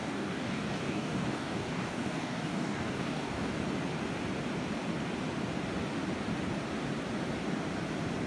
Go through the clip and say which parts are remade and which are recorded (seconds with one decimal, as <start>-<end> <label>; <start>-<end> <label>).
0.0-3.5 remade; 3.5-8.3 recorded